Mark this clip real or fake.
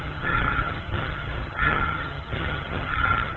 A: fake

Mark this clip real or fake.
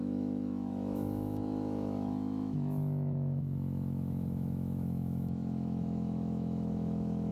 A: fake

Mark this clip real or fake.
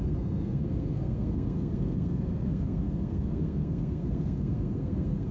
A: fake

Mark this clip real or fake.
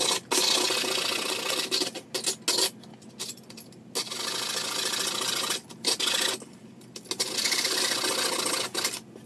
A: real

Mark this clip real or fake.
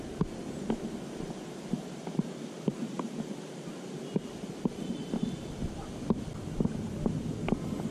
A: real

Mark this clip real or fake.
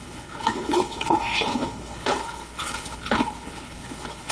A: fake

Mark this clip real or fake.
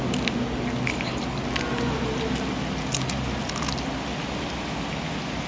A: real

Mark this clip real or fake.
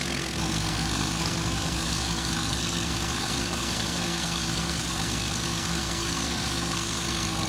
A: fake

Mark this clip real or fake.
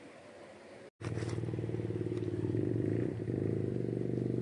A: real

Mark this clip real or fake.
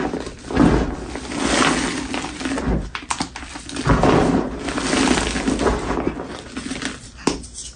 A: real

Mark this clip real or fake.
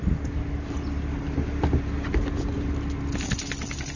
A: real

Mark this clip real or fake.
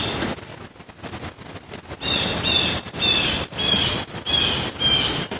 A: real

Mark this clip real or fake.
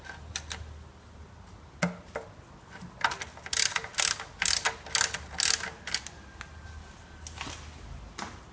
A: real